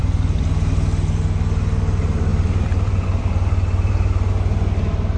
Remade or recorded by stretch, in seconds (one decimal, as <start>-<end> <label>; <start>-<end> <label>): 0.0-2.3 recorded; 2.3-4.3 remade; 4.3-5.2 recorded